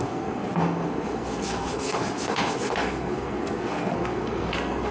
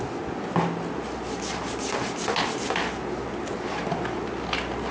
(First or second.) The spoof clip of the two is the first